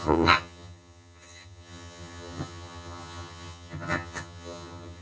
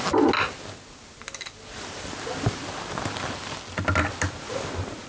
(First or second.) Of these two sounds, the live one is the second